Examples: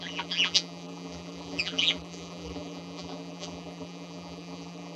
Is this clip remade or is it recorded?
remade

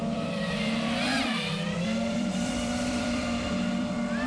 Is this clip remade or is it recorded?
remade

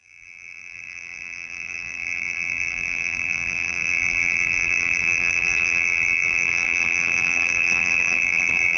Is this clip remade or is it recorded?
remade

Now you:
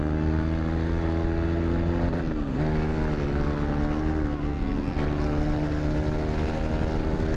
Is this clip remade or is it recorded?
recorded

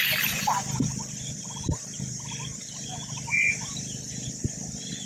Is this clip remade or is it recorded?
remade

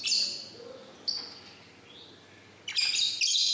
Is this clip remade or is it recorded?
remade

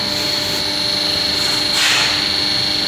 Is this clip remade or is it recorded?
recorded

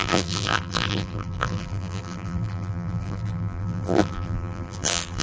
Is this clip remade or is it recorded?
remade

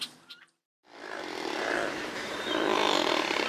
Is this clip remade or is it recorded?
remade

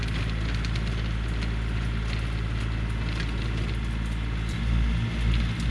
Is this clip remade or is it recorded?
recorded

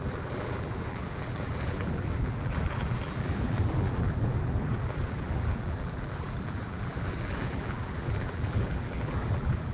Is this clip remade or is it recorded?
remade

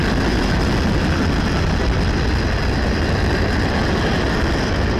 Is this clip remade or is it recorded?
recorded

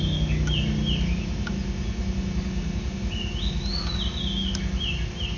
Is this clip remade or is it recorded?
recorded